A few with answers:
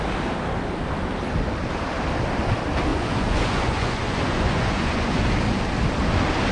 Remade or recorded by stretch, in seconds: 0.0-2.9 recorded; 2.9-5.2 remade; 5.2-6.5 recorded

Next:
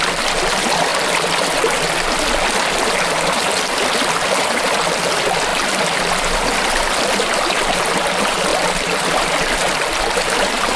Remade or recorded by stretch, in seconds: 0.0-10.8 recorded

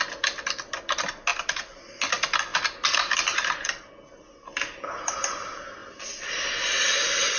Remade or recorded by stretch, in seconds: 0.0-2.5 recorded; 2.5-3.9 remade; 3.9-5.8 recorded; 5.8-7.4 remade

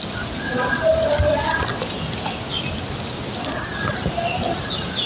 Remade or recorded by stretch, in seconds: 0.0-5.1 recorded

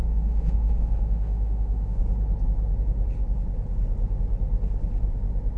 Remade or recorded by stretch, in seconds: 0.0-2.0 remade; 2.0-5.6 recorded

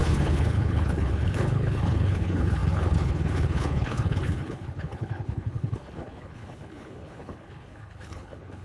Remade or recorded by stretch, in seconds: 0.0-8.6 remade